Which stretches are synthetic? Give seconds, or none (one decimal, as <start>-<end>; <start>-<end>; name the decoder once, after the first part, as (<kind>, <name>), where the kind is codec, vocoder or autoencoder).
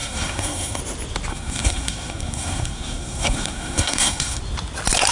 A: 0.0-0.8 (codec, SNAC); 1.3-4.4